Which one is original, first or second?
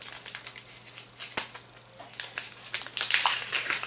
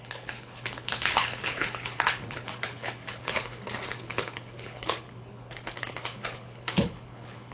first